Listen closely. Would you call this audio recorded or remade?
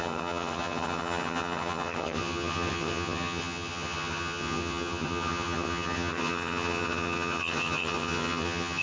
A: remade